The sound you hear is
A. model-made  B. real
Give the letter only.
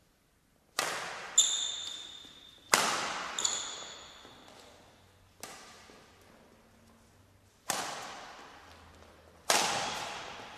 B